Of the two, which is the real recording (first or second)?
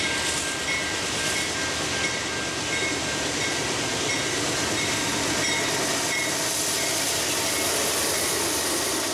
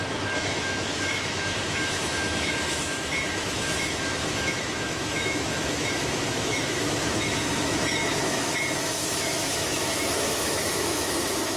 first